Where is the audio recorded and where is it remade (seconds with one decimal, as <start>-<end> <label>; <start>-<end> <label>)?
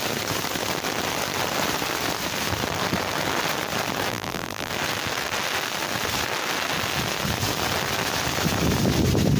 0.0-4.1 recorded; 4.1-4.7 remade; 4.7-9.4 recorded